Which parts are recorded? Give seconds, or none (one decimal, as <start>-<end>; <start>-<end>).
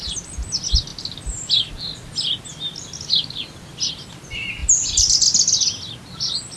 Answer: 0.0-6.6